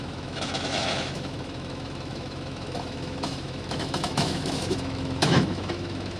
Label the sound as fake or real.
fake